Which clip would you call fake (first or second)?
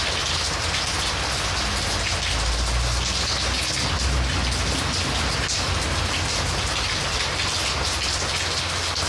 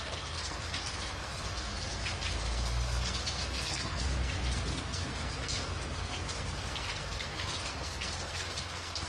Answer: second